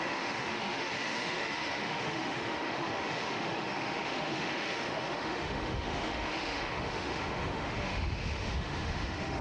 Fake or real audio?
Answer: fake